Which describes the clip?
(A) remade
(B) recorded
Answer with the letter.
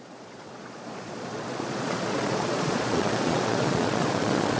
A